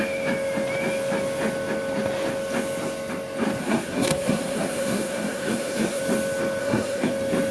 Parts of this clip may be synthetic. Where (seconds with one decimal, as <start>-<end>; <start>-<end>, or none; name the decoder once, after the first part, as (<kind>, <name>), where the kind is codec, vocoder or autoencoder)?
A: 3.6-6.0 (codec, SNAC); 6.6-7.1

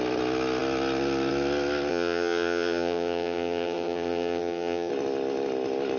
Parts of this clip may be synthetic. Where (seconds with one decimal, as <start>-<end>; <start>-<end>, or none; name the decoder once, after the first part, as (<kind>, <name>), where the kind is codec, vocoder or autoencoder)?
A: 1.9-4.9 (vocoder, HiFi-GAN)

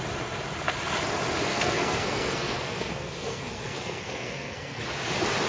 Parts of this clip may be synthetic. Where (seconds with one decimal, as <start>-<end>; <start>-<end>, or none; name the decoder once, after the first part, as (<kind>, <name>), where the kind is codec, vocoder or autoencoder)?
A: 1.5-4.8 (codec, SNAC)

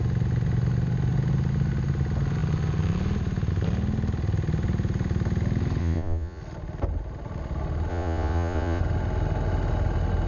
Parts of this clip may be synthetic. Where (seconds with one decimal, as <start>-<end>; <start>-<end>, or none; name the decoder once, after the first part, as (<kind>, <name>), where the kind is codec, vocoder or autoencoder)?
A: 5.8-6.4 (vocoder, Vocos); 7.9-8.8

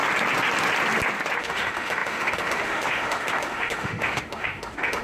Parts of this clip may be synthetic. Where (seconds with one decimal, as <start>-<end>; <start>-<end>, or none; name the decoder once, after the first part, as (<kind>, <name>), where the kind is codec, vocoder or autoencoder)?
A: 1.4-5.0 (autoencoder, DAC-VAE)